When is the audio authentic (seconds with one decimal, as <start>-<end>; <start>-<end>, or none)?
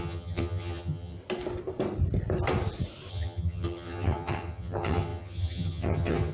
1.2-3.1